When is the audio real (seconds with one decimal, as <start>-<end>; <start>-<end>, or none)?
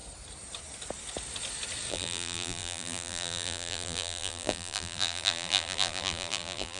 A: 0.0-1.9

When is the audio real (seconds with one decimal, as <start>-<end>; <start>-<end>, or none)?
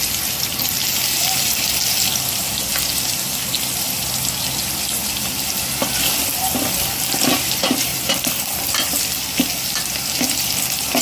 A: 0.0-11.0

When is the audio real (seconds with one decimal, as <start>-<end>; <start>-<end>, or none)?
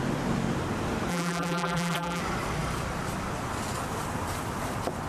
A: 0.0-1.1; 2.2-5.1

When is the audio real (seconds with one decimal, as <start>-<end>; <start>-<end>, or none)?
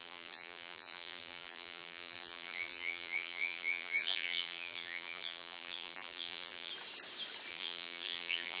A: 6.7-7.5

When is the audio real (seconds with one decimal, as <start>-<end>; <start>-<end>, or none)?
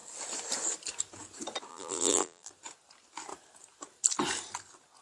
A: 0.0-1.7; 2.5-5.0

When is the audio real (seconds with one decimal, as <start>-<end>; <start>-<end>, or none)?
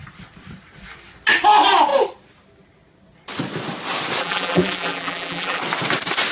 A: 0.0-4.2; 5.6-6.3